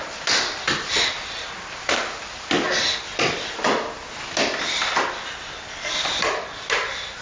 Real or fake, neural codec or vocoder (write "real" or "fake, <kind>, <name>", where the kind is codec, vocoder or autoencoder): real